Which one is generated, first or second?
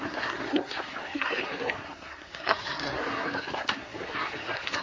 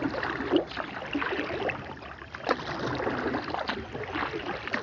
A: first